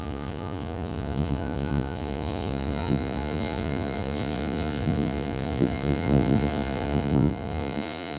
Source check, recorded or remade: remade